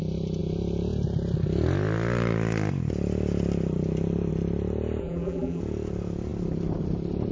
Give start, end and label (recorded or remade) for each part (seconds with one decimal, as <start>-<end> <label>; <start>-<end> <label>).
0.0-5.0 recorded; 5.0-5.6 remade; 5.6-7.3 recorded